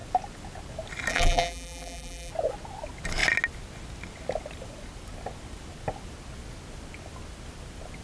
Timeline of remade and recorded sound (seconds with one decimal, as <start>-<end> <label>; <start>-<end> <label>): 0.0-1.1 recorded; 1.1-2.3 remade; 2.3-8.0 recorded